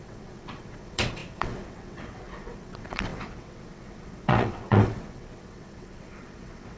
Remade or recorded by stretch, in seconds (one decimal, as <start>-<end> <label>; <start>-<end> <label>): 0.0-6.8 remade